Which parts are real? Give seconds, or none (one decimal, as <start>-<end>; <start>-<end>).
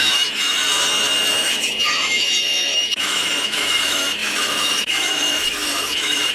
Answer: 0.6-1.3